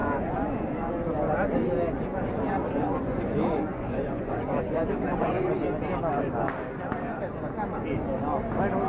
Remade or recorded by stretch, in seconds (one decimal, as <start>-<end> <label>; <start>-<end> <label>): 0.0-0.9 remade; 0.9-2.1 recorded; 2.1-5.6 remade; 5.6-8.9 recorded